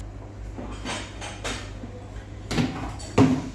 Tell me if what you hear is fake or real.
real